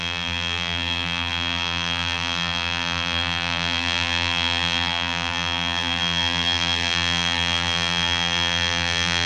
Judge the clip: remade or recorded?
remade